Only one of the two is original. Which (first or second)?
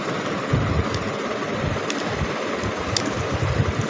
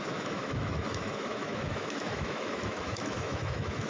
first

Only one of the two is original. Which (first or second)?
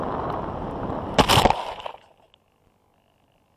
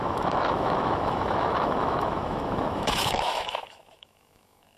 first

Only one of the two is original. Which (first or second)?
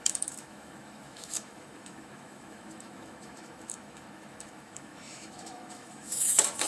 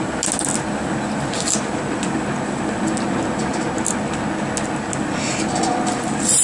second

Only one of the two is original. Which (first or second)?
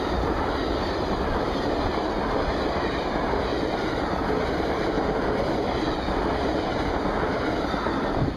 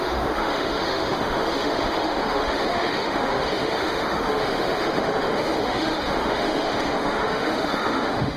first